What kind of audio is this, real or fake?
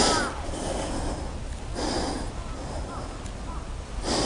real